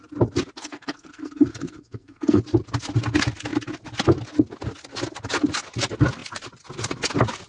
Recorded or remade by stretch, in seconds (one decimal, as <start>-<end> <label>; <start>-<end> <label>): 0.0-0.6 recorded; 0.6-2.4 remade; 2.4-7.5 recorded